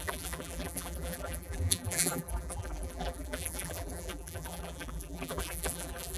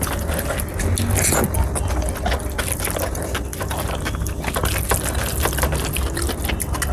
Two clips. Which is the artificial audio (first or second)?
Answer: first